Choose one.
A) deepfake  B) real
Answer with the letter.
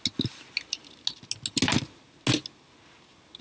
B